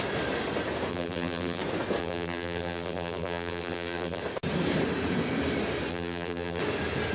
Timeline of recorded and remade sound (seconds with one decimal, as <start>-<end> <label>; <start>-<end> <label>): 0.0-0.9 recorded; 0.9-1.6 remade; 1.6-2.0 recorded; 2.0-4.2 remade; 4.2-5.9 recorded; 5.9-6.6 remade; 6.6-7.1 recorded